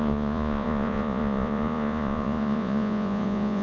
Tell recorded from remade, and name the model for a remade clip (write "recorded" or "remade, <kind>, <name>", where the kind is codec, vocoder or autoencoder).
remade, vocoder, Vocos